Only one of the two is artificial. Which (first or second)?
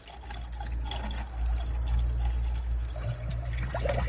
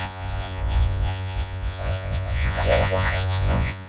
second